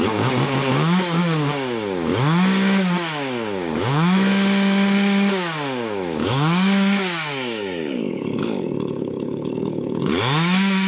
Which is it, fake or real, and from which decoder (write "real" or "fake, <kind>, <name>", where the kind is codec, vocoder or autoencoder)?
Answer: fake, codec, DAC